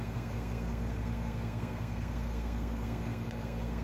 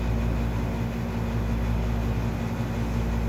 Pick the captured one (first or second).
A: second